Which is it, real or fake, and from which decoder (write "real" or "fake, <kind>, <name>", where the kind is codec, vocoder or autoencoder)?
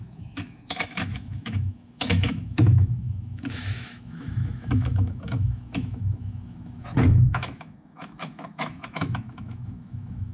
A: fake, autoencoder, DAC-VAE